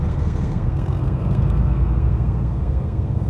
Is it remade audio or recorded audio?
remade